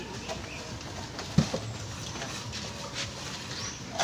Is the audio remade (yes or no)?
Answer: yes